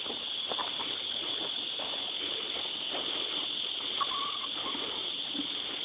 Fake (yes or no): no